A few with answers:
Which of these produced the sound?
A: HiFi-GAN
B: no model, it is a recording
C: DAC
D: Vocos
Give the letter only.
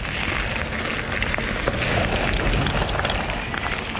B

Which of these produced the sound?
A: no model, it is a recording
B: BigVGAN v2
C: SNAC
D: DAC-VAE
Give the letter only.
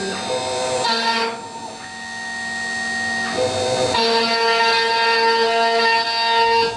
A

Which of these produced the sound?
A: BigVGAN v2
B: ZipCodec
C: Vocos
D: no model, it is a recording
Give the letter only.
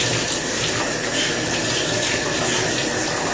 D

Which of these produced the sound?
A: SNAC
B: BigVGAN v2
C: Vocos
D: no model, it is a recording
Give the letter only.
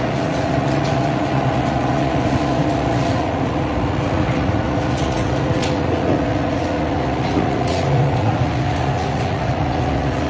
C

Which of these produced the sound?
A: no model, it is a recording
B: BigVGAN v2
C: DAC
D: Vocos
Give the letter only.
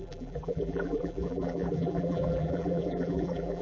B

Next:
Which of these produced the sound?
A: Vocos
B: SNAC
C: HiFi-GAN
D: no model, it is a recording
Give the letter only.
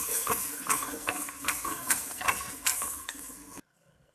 B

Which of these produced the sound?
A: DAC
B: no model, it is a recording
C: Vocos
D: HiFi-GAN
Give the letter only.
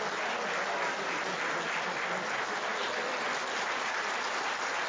B